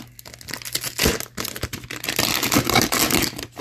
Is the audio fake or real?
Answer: real